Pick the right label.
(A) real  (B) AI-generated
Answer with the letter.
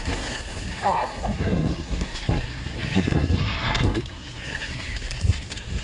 B